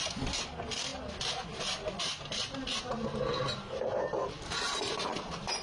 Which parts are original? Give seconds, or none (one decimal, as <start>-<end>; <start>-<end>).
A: 0.0-5.6